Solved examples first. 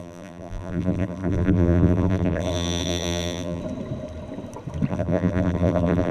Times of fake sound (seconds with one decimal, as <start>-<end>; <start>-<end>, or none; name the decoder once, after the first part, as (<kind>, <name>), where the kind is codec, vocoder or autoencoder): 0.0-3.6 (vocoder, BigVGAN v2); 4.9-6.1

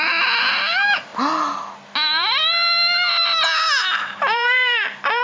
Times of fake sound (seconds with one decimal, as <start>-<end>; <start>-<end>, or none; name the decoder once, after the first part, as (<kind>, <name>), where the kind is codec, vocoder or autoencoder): 0.0-1.1 (vocoder, BigVGAN v2); 4.2-5.2

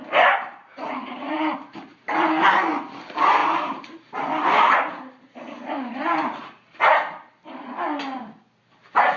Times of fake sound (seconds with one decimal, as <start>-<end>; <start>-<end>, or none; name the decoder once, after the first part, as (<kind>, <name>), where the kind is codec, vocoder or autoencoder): 0.6-2.7 (vocoder, BigVGAN v2); 3.4-6.8

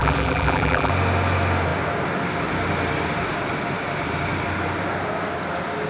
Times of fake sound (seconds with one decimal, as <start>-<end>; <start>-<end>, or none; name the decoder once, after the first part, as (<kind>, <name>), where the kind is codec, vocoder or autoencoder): 0.0-0.9 (vocoder, BigVGAN v2)